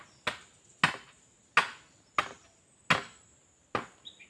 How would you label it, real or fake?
real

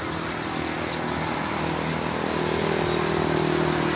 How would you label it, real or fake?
real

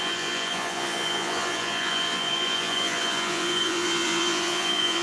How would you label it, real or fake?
fake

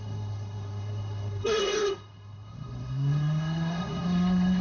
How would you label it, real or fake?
fake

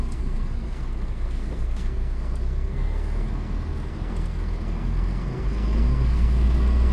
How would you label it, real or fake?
fake